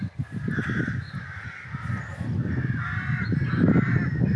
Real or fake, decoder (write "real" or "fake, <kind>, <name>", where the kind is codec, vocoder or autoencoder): real